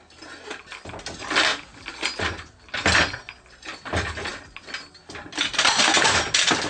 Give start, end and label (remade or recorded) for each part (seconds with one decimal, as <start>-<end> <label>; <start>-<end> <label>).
0.0-6.7 recorded